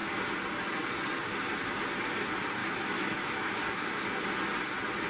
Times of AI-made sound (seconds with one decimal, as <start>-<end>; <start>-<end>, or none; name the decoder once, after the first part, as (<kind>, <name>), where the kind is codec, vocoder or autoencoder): 2.6-3.6 (autoencoder, DAC-VAE)